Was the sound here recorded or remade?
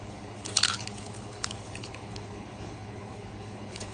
remade